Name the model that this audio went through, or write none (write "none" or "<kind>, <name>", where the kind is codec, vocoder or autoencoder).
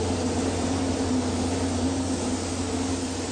none